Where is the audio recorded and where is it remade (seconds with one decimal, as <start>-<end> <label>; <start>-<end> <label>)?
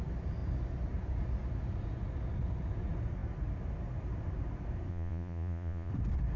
0.0-4.9 recorded; 4.9-5.9 remade; 5.9-6.4 recorded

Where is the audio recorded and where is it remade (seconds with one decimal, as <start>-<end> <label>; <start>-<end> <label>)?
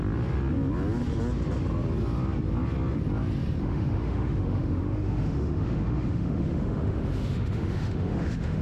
0.0-3.6 recorded; 3.6-8.6 remade